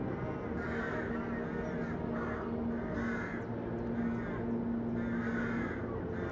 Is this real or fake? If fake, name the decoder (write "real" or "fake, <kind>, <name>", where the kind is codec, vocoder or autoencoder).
real